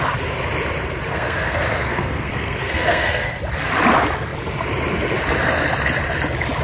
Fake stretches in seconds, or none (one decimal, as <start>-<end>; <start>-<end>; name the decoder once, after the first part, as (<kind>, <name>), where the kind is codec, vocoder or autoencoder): 1.1-3.4 (codec, SNAC)